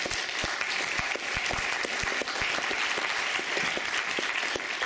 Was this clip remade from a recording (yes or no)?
no